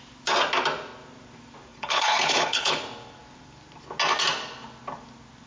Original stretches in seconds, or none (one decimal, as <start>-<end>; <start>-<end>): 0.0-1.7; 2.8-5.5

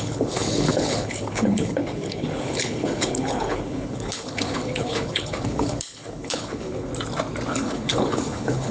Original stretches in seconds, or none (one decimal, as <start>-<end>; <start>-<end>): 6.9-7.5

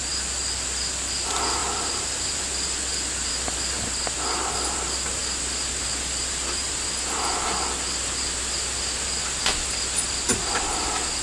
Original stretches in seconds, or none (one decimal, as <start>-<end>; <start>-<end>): 0.0-11.2

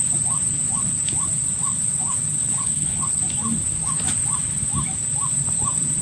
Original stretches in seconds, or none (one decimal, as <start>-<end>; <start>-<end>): 0.0-2.4; 3.2-6.0

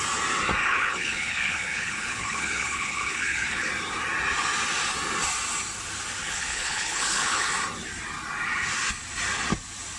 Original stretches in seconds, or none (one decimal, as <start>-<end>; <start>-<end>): 0.0-0.6; 3.7-6.2; 7.5-10.0